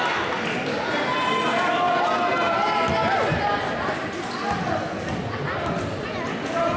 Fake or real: real